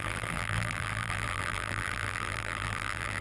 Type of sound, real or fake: fake